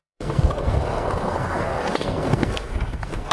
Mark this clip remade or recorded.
remade